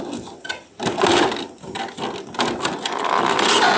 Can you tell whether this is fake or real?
real